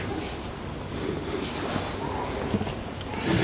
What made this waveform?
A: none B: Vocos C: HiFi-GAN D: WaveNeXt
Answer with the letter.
A